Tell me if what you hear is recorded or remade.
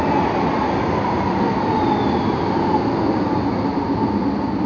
recorded